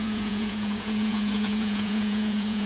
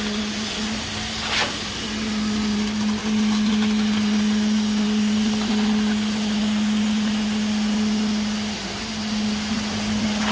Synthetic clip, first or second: first